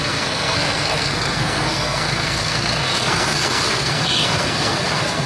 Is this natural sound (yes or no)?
no